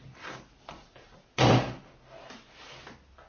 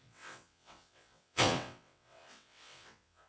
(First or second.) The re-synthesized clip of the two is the second